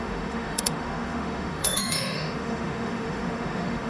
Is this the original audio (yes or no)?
no